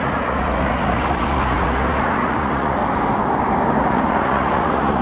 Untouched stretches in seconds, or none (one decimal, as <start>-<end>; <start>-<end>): 2.8-3.8